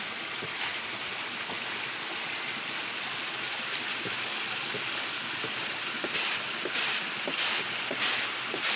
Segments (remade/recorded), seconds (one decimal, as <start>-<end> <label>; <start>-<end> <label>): 0.0-8.8 recorded